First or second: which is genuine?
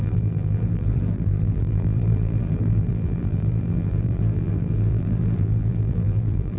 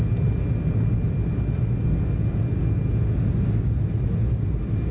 second